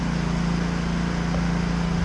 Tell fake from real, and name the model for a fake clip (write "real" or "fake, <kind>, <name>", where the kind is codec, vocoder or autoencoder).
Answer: real